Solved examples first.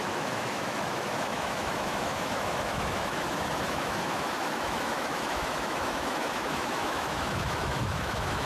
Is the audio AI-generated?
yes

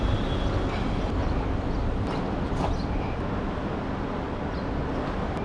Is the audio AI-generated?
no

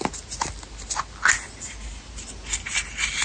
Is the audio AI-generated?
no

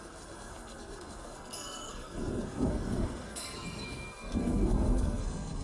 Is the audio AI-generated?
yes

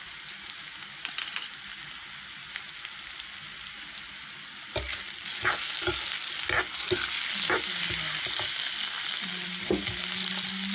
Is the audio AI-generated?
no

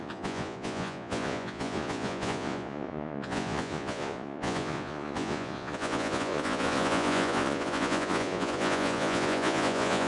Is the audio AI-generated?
yes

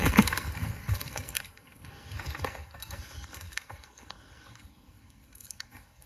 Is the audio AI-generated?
yes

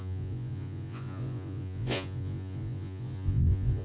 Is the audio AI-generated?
yes